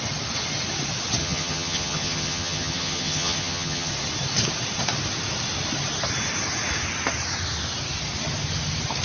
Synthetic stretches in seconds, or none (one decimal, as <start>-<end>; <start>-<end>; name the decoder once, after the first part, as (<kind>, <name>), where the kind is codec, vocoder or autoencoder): 1.2-3.9 (vocoder, HiFi-GAN)